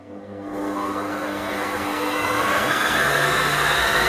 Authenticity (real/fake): fake